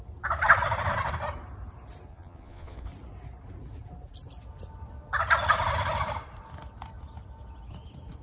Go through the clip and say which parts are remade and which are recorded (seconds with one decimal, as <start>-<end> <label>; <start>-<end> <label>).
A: 0.0-2.1 recorded; 2.1-2.9 remade; 2.9-8.2 recorded

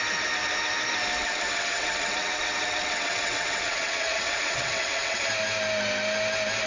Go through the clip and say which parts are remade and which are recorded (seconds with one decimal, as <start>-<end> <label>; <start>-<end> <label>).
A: 0.0-1.2 recorded; 1.2-5.2 remade; 5.2-6.7 recorded